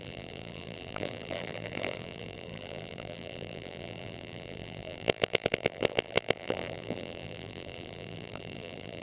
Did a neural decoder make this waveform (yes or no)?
yes